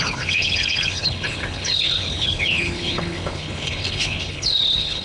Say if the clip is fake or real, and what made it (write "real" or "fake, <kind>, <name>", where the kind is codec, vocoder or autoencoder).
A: fake, codec, HILCodec